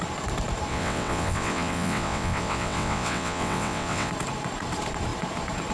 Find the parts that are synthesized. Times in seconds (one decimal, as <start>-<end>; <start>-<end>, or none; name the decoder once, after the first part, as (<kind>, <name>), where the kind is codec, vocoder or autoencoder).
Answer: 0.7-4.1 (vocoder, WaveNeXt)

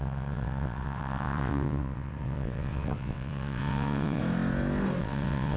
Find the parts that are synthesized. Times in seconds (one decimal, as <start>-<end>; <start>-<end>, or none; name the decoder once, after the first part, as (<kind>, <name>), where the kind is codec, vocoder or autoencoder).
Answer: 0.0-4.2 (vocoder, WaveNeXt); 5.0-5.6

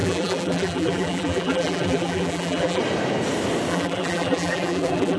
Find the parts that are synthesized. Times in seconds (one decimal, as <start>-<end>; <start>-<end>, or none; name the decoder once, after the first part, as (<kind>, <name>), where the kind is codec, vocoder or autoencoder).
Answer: 0.0-2.8 (vocoder, BigVGAN v2); 3.7-5.2